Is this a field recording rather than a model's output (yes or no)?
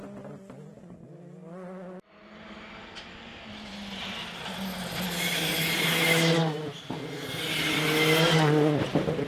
yes